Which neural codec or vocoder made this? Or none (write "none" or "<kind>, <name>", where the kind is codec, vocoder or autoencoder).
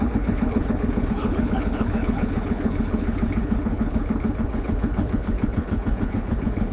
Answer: codec, HILCodec